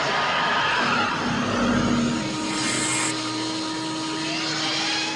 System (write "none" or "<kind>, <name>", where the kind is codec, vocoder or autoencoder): none